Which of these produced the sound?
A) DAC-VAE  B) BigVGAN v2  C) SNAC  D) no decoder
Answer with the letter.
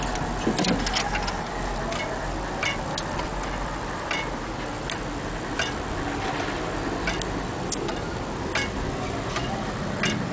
D